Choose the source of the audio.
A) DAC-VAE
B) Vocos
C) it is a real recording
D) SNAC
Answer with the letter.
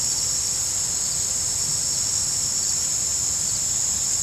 C